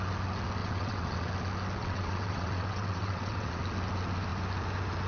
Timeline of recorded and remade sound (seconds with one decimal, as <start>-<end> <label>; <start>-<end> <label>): 0.0-0.6 recorded; 0.6-1.3 remade; 1.3-1.8 recorded; 1.8-3.6 remade; 3.6-5.1 recorded